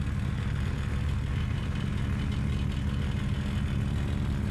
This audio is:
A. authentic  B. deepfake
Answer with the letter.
A